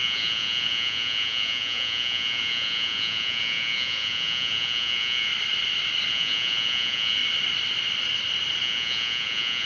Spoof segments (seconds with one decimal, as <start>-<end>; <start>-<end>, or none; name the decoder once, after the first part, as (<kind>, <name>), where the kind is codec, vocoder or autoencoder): 0.0-5.3 (vocoder, Vocos); 6.1-7.2; 8.6-9.7